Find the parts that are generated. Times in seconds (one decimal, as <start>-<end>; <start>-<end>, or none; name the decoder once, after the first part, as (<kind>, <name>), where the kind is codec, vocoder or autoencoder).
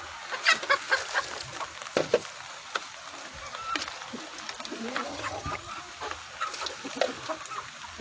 5.1-5.7 (vocoder, HiFi-GAN)